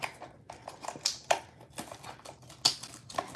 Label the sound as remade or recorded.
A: recorded